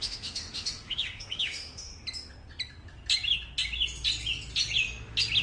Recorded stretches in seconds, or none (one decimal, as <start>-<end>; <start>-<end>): 1.9-5.4